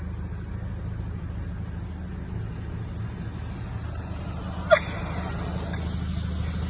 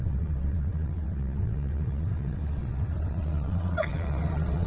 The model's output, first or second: second